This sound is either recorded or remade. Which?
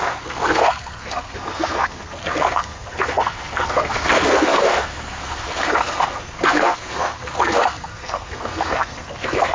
remade